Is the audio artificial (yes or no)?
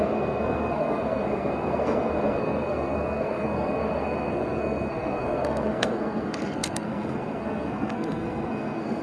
yes